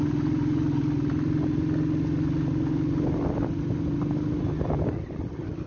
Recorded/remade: recorded